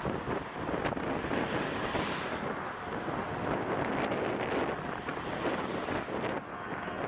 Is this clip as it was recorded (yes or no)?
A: yes